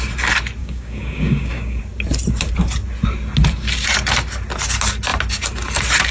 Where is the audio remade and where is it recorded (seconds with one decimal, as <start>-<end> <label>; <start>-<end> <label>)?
0.0-0.6 recorded; 0.6-1.8 remade; 1.8-6.1 recorded